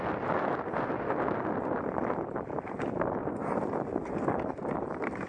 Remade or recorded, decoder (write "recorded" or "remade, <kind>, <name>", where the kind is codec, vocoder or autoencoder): recorded